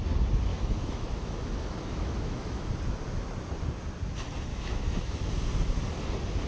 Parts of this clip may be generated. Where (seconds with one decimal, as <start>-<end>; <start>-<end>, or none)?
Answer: 0.5-2.7; 4.5-5.3